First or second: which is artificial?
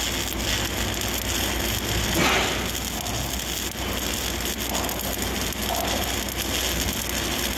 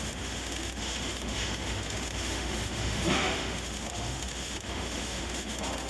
second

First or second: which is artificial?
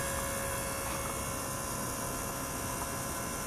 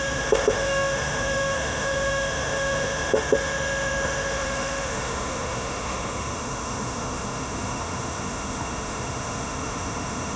second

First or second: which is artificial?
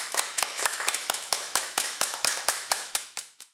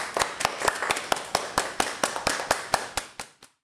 first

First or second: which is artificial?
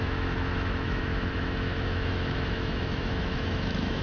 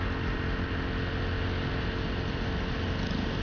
first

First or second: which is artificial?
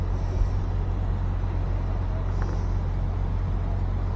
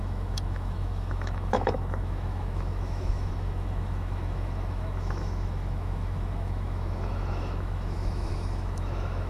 second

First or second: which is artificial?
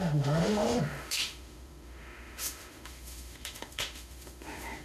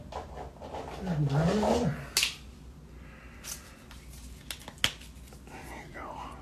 first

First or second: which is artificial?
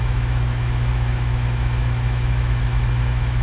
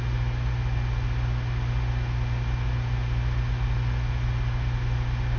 first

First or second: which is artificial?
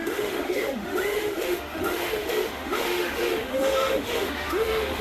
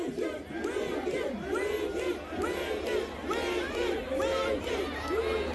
first